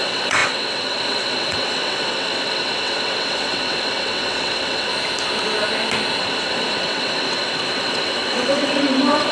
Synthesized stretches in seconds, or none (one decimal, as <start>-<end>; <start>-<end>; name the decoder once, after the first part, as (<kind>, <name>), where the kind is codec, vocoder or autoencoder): 0.0-4.9 (vocoder, WaveNeXt); 6.2-9.3